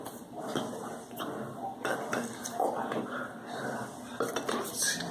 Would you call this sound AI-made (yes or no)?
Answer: no